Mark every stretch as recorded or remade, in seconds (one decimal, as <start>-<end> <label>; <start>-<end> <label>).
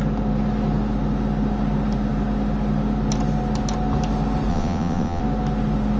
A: 0.0-4.5 recorded; 4.5-5.2 remade; 5.2-6.0 recorded